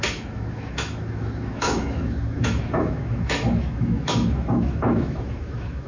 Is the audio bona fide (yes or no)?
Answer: no